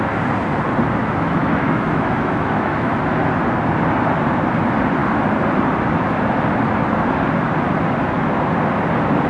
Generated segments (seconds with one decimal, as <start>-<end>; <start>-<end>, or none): 1.0-2.9